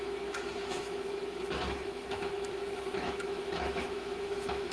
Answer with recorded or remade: remade